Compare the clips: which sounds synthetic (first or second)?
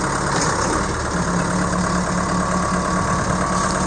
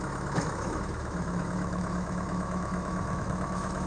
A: second